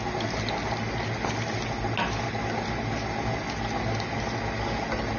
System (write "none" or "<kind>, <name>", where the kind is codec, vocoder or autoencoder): none